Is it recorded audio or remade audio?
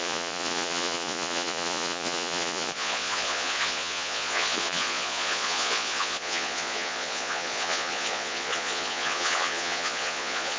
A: remade